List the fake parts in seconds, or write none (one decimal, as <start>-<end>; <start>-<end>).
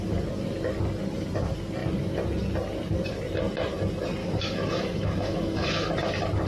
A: 4.2-5.9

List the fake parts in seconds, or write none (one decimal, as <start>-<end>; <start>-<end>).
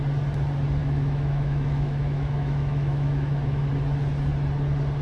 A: 0.8-3.7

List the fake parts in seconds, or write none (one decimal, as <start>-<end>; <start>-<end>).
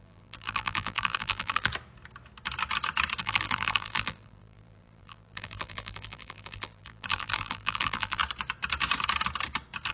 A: 0.0-1.7; 3.2-8.2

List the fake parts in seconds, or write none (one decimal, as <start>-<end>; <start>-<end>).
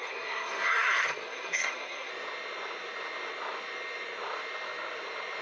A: 0.0-2.1